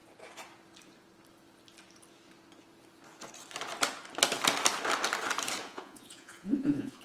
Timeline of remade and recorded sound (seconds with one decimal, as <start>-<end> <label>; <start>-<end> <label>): 0.0-5.6 recorded; 5.6-7.0 remade